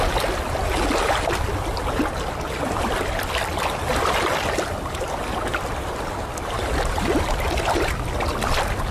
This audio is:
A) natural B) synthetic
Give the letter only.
A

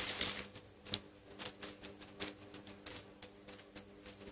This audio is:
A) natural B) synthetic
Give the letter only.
A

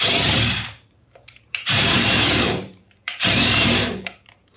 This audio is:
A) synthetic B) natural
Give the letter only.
A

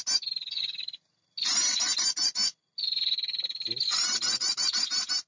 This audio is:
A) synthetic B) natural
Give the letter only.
B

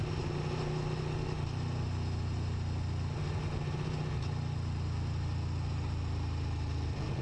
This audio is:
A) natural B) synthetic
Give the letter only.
A